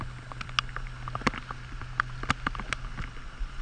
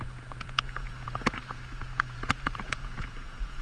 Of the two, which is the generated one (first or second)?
second